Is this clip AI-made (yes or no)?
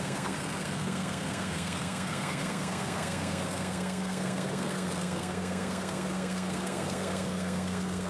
yes